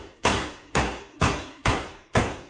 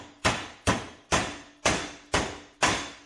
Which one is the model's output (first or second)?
first